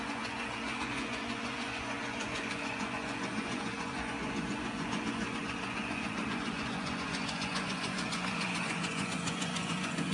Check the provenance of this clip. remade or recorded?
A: remade